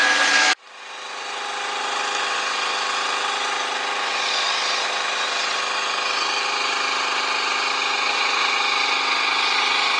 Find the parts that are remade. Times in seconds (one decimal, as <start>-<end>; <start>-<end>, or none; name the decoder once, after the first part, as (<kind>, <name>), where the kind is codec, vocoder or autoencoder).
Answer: 0.0-0.6 (autoencoder, DAC-VAE)